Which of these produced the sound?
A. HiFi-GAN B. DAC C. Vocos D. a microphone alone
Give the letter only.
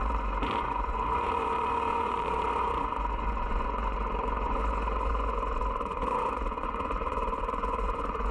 C